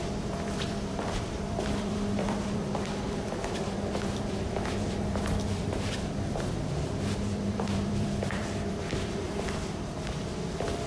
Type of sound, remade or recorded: remade